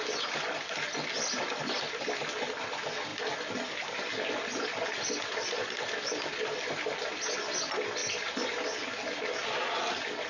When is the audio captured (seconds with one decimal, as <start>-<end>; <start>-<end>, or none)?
0.0-10.3